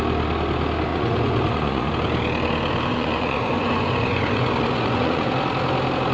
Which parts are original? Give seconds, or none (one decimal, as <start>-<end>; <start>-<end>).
0.0-0.9; 1.9-2.9; 5.3-6.1